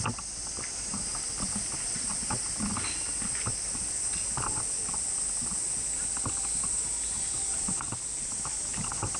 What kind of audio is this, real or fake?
real